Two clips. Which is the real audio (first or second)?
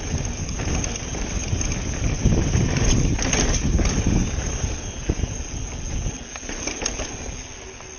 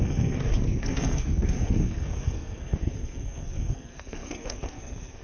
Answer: first